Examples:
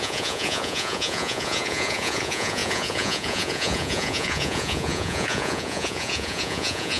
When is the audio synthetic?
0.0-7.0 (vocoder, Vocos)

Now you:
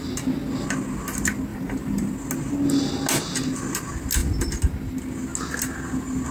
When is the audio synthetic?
1.5-2.1 (vocoder, BigVGAN v2)

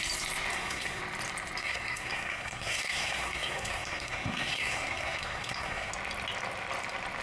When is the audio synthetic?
0.5-1.0 (codec, SNAC); 1.6-5.9

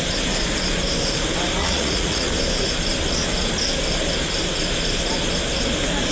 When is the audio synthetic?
1.6-2.3 (vocoder, Vocos)

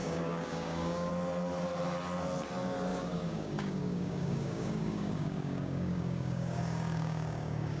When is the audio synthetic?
0.0-1.1 (codec, DAC); 2.9-7.8